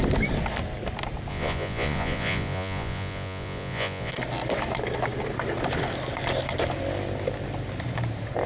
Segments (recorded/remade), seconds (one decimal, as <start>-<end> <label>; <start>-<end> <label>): 0.0-1.3 recorded; 1.3-4.1 remade; 4.1-8.5 recorded